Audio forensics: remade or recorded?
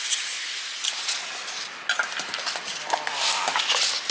recorded